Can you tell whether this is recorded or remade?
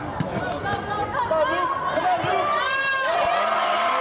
recorded